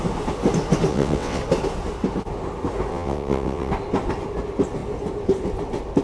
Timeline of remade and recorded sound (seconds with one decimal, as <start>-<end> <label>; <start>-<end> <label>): 0.0-0.9 recorded; 0.9-1.4 remade; 1.4-2.9 recorded; 2.9-3.7 remade; 3.7-6.0 recorded